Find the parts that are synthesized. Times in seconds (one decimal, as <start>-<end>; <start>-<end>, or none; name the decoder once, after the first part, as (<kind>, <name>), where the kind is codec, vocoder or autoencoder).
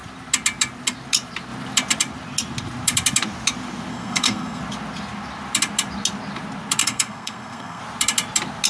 3.9-4.6 (codec, SNAC); 6.8-7.8